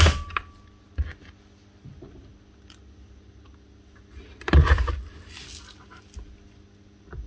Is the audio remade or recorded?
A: recorded